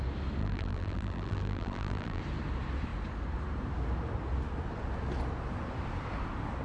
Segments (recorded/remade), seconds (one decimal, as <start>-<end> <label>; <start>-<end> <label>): 0.0-0.4 recorded; 0.4-2.2 remade; 2.2-6.6 recorded